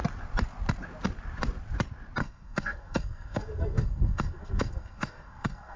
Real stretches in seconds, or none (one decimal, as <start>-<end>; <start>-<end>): 0.0-2.2